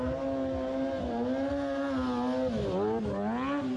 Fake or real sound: real